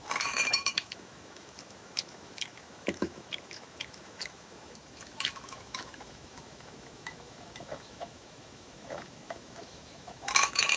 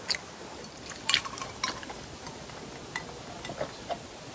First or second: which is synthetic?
first